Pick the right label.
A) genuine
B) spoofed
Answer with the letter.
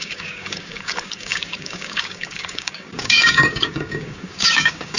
B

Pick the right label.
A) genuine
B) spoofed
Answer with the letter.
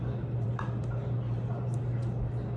B